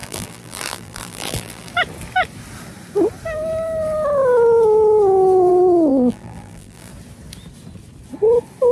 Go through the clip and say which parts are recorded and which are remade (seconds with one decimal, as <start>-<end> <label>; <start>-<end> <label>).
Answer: 0.0-1.7 remade; 1.7-5.9 recorded; 5.9-6.9 remade; 6.9-8.7 recorded